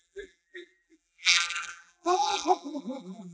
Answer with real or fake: fake